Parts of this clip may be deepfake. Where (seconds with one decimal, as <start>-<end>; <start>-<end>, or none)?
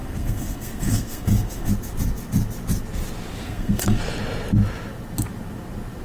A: 0.0-1.7; 3.4-4.0